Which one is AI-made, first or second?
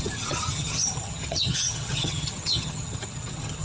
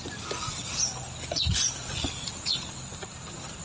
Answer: first